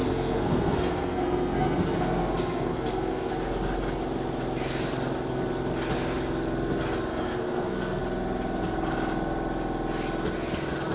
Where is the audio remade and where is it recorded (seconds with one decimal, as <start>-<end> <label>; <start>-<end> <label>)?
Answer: 0.0-3.3 remade; 3.3-7.1 recorded; 7.1-8.0 remade; 8.0-10.9 recorded